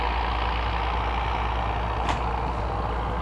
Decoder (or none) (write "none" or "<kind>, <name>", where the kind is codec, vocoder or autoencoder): none